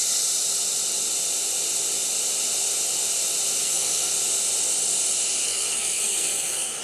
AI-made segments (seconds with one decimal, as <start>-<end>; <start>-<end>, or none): 3.6-4.1; 5.4-6.8